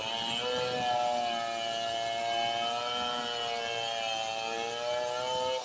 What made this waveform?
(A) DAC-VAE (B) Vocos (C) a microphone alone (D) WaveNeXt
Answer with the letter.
C